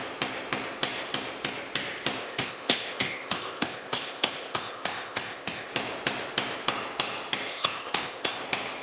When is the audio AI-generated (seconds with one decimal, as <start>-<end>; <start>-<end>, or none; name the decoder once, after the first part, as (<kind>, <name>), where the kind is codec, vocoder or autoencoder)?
2.2-5.7 (codec, ZipCodec); 7.5-8.4